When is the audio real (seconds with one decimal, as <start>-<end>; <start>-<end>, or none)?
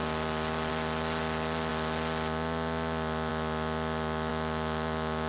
0.0-4.3